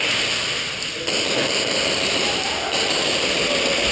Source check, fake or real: real